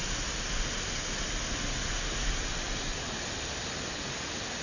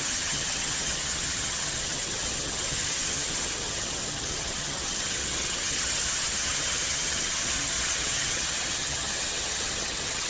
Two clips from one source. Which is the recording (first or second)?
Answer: first